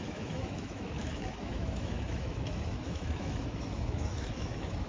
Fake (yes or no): yes